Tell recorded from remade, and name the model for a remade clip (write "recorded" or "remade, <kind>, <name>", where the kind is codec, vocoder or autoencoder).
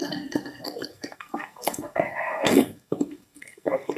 remade, codec, SNAC